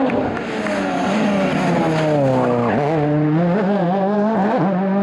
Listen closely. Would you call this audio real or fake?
real